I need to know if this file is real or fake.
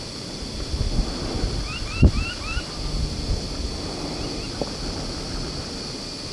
real